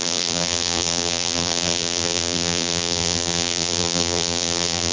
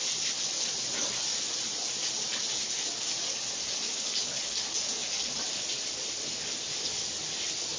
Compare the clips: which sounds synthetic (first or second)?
first